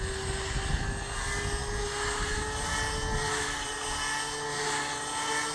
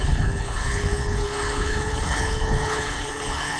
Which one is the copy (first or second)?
second